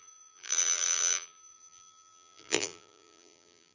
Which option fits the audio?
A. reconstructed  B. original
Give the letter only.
A